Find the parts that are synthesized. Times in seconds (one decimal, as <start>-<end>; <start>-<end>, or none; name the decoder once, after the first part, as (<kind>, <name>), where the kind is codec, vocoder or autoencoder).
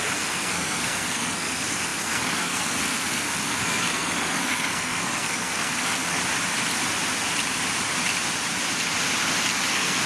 0.0-6.2 (codec, SNAC); 9.7-10.1